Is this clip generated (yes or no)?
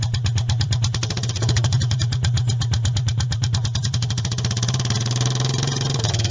yes